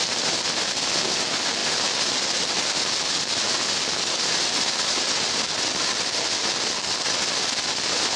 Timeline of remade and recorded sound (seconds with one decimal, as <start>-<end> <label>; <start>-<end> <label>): 0.0-8.2 recorded